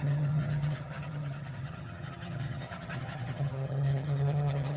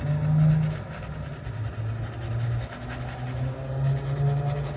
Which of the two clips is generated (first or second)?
first